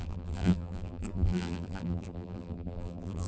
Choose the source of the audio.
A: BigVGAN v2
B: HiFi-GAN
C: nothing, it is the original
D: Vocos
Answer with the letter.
A